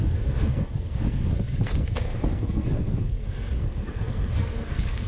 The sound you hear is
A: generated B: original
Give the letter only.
A